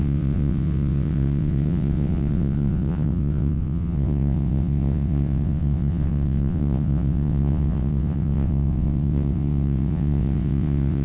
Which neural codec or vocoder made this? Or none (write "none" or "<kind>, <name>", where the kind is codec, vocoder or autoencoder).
vocoder, WaveNeXt